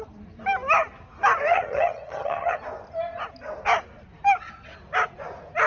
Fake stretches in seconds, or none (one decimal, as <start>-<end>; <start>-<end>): 1.5-2.6